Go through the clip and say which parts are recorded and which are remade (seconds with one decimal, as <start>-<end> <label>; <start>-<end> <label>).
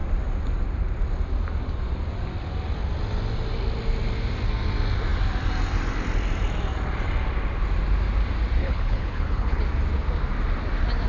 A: 0.0-8.6 recorded; 8.6-9.6 remade; 9.6-11.1 recorded